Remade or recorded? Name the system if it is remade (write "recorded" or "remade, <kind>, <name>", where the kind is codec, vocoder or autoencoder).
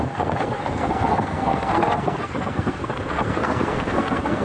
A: remade, codec, SNAC